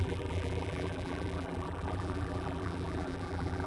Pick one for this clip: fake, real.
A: fake